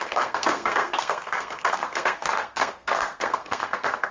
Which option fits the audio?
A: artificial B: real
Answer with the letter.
A